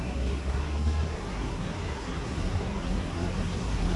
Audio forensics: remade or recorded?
remade